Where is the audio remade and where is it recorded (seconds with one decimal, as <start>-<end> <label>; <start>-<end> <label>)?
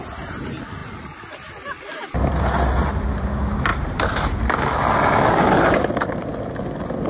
0.0-3.7 recorded; 3.7-4.9 remade; 4.9-7.1 recorded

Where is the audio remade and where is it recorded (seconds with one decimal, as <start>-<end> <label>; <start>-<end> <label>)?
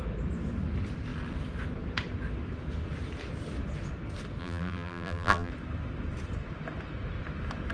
0.0-4.4 recorded; 4.4-5.5 remade; 5.5-7.7 recorded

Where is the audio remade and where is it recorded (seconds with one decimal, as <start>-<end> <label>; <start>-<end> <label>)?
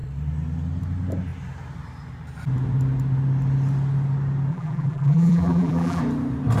0.0-4.5 recorded; 4.5-6.0 remade; 6.0-6.6 recorded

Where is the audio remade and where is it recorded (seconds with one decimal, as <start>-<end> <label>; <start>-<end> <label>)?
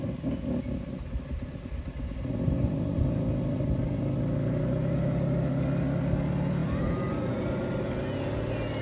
0.0-8.8 recorded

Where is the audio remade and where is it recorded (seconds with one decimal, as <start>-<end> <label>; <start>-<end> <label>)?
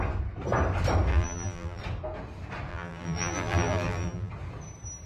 0.0-1.1 recorded; 1.1-1.8 remade; 1.8-2.7 recorded; 2.7-4.3 remade; 4.3-5.1 recorded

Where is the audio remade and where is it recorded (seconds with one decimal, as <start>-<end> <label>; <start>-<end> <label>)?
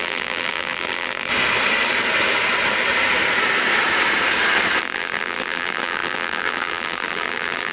0.0-1.3 remade; 1.3-4.8 recorded; 4.8-7.7 remade